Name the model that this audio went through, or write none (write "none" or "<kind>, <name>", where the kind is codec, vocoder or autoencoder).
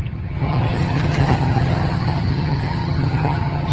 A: vocoder, HiFi-GAN